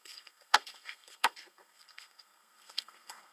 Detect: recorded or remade remade